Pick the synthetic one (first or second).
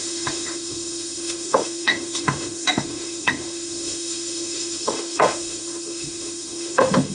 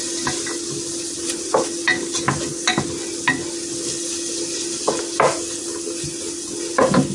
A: first